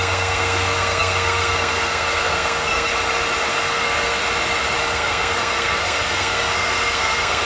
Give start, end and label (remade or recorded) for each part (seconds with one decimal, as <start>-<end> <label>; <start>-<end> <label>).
0.0-2.9 remade; 2.9-3.5 recorded; 3.5-4.2 remade; 4.2-4.8 recorded; 4.8-7.4 remade